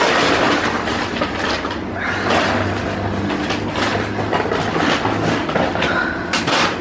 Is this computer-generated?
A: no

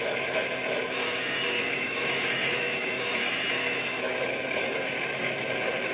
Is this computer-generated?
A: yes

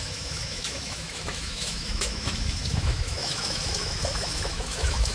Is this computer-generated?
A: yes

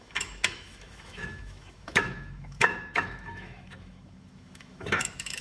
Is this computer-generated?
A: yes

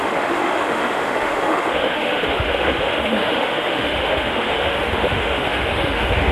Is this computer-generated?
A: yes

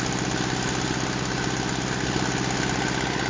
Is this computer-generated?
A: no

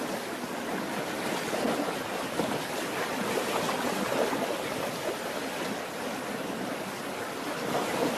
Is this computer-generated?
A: no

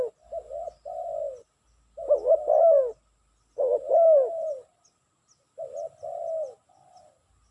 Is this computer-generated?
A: no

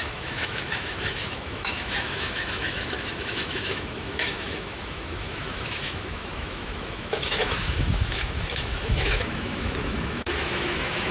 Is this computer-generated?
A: yes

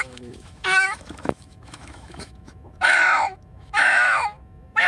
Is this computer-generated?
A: yes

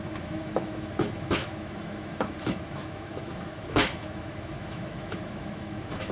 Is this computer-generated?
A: yes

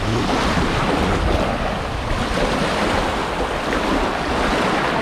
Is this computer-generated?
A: no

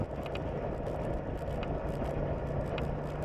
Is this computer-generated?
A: no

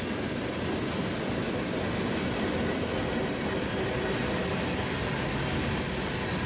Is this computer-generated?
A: no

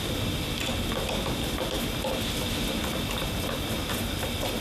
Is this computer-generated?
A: no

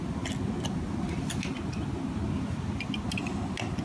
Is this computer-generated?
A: no